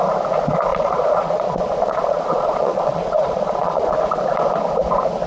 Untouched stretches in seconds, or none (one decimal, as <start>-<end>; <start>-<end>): 0.0-0.7; 3.9-5.3